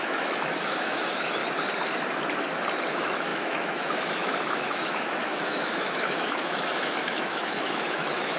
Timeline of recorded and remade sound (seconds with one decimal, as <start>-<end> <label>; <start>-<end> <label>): 0.0-1.4 remade; 1.4-2.9 recorded; 2.9-8.4 remade